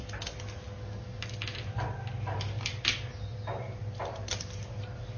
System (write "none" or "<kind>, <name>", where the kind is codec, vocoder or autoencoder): none